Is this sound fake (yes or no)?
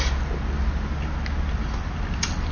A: no